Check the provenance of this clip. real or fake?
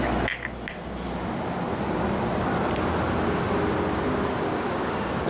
real